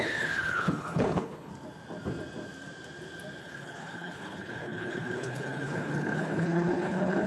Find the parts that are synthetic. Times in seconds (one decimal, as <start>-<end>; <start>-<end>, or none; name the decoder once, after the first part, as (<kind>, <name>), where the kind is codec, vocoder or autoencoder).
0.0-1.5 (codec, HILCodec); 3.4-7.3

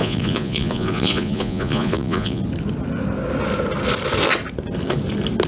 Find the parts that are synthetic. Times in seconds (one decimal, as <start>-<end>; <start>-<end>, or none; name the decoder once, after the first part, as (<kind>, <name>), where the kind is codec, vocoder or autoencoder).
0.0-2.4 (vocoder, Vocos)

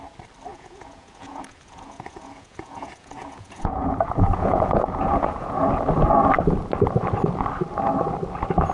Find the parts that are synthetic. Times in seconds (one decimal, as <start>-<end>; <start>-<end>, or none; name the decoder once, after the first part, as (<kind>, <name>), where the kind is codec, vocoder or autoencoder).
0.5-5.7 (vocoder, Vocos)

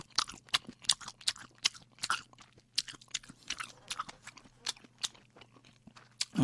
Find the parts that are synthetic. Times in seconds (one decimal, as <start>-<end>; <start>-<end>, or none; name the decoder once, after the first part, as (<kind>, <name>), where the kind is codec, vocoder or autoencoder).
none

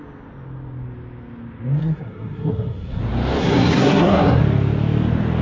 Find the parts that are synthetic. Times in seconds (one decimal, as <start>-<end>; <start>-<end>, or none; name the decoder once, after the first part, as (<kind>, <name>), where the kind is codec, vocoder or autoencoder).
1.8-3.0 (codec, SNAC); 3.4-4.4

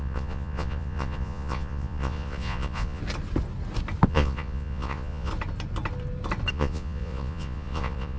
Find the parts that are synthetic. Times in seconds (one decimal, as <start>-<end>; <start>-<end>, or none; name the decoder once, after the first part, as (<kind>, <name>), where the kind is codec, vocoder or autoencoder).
0.0-3.0 (vocoder, Vocos); 4.1-5.3; 6.5-8.2